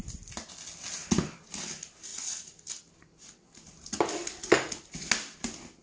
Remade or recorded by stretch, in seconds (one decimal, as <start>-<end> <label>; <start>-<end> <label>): 0.0-5.8 recorded